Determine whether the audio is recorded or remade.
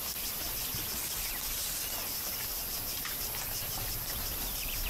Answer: remade